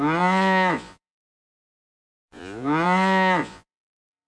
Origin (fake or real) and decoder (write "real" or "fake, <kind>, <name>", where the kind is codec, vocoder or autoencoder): fake, vocoder, Vocos